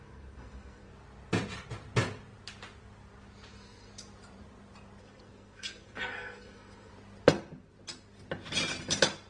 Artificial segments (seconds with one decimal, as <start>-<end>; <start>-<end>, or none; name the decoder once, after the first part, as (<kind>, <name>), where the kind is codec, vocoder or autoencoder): 0.0-0.9 (codec, SNAC); 3.5-3.9; 5.0-6.9